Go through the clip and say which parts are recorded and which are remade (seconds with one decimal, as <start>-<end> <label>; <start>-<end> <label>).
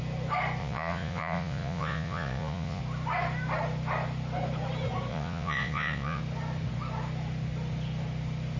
0.0-0.6 recorded; 0.6-2.8 remade; 2.8-5.1 recorded; 5.1-6.2 remade; 6.2-8.6 recorded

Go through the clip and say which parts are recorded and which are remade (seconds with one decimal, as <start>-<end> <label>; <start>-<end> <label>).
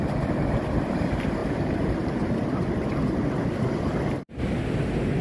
0.0-1.4 recorded; 1.4-2.3 remade; 2.3-5.2 recorded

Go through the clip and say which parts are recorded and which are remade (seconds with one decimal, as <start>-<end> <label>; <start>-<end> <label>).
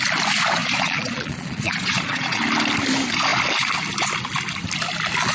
0.0-0.6 recorded; 0.6-2.4 remade; 2.4-5.3 recorded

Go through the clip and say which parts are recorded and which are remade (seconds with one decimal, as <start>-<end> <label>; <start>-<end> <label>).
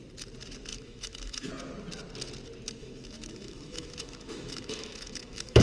0.0-0.7 recorded; 0.7-1.5 remade; 1.5-2.8 recorded; 2.8-5.6 remade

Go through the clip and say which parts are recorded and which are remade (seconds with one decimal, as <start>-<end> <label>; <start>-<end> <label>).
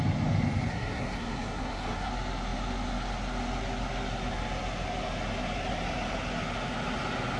0.0-0.7 recorded; 0.7-2.1 remade; 2.1-7.4 recorded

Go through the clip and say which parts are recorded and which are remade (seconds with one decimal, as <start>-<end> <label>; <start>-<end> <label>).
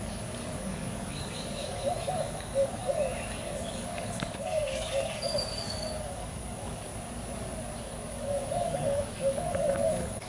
0.0-6.9 remade; 6.9-7.8 recorded; 7.8-10.3 remade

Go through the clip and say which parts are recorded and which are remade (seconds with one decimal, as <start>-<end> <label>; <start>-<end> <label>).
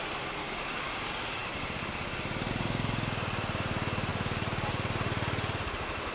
0.0-0.4 recorded; 0.4-0.9 remade; 0.9-6.1 recorded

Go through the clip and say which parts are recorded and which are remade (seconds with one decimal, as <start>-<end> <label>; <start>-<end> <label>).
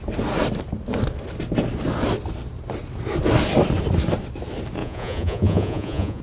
0.0-4.8 recorded; 4.8-6.2 remade